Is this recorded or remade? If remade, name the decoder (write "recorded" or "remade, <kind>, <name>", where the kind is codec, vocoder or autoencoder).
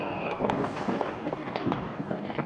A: remade, codec, DAC